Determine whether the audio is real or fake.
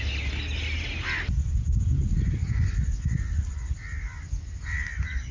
real